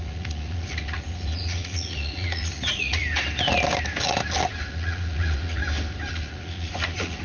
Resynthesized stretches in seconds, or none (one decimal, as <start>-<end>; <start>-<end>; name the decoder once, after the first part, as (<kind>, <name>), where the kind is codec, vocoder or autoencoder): 0.0-3.0 (vocoder, Vocos); 4.7-5.6; 6.1-7.2